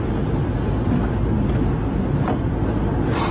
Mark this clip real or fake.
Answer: real